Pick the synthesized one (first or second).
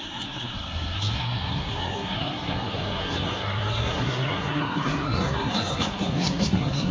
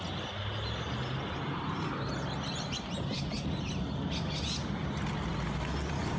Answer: first